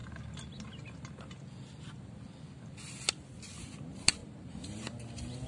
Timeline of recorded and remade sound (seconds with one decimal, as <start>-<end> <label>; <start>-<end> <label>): 0.0-4.2 recorded; 4.2-4.9 remade; 4.9-5.5 recorded